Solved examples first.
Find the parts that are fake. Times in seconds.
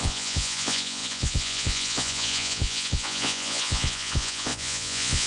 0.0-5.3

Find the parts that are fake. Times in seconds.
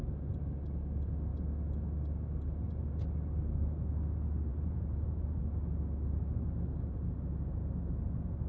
4.5-5.4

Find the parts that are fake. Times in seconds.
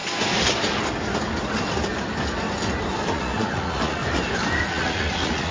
3.1-4.0; 4.6-5.5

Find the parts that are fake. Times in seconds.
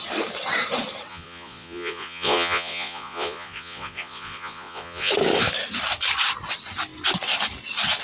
1.1-5.1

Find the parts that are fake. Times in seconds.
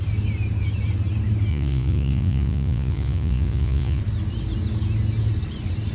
1.5-4.0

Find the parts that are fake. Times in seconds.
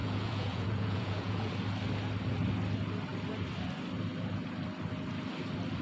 0.0-1.5